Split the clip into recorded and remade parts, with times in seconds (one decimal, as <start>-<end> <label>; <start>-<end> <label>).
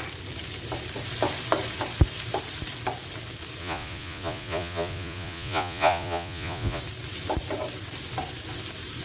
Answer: 0.0-3.6 recorded; 3.6-6.8 remade; 6.8-9.0 recorded